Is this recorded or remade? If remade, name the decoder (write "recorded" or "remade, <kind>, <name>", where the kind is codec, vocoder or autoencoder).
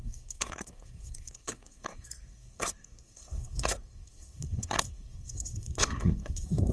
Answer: remade, codec, SNAC